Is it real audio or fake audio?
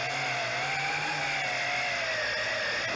real